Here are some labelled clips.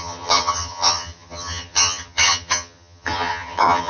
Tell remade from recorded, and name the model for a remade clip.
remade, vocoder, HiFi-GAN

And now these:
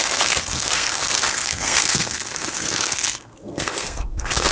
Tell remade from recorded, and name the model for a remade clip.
remade, codec, SNAC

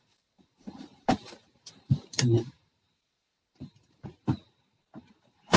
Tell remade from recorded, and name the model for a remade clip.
remade, vocoder, BigVGAN v2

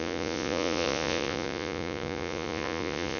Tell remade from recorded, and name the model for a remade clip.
remade, vocoder, Vocos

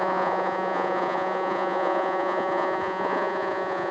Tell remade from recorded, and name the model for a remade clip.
remade, vocoder, Vocos